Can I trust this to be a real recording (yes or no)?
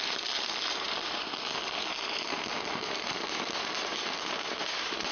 no